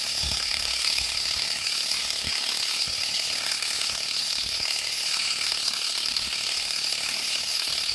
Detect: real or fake fake